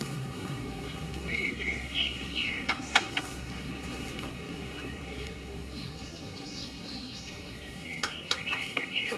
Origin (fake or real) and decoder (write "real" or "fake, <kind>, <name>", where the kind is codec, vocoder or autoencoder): fake, codec, SNAC